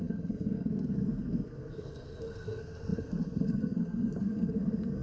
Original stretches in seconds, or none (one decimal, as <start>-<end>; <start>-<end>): none